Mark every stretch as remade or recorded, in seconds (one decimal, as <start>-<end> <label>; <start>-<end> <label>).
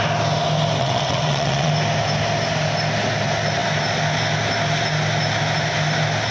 0.0-0.8 recorded; 0.8-1.7 remade; 1.7-6.3 recorded